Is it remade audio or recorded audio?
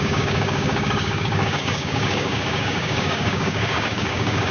remade